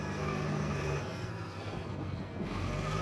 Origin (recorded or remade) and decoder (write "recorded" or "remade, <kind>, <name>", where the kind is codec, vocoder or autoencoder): remade, codec, SNAC